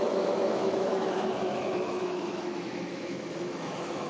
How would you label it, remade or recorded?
remade